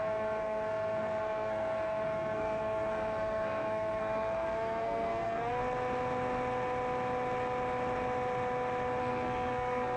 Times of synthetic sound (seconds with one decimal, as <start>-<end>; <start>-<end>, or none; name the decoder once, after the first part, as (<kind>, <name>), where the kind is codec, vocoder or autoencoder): 0.0-5.6 (codec, SNAC); 9.0-10.0